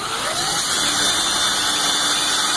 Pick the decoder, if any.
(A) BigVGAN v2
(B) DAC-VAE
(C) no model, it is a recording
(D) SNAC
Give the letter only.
C